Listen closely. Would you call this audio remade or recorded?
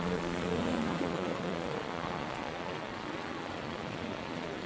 remade